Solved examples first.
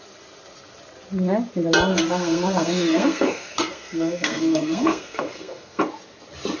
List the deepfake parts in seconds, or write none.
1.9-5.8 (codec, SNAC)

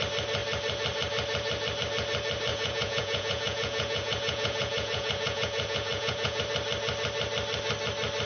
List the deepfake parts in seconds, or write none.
2.5-6.4 (vocoder, Vocos)

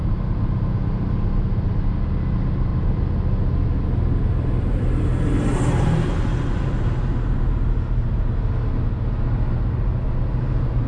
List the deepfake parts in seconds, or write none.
none